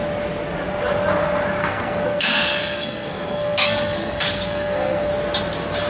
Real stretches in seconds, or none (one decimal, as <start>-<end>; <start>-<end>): 0.0-1.6; 5.1-5.9